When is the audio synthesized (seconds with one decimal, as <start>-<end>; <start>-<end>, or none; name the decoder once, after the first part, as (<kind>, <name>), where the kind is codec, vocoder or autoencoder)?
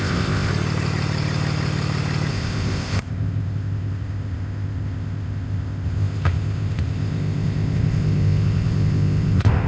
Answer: 0.0-0.5 (codec, ZipCodec); 2.3-9.7